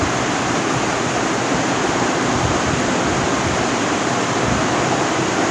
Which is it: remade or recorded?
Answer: recorded